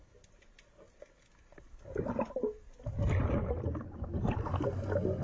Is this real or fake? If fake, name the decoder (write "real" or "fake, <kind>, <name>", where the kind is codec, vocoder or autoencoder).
real